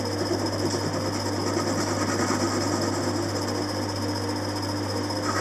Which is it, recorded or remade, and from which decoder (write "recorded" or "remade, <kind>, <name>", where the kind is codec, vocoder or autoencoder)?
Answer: recorded